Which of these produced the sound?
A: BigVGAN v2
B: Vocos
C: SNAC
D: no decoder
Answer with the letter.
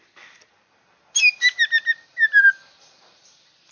D